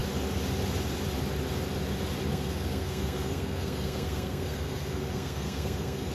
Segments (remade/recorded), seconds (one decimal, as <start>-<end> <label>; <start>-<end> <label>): 0.0-2.3 recorded; 2.3-6.1 remade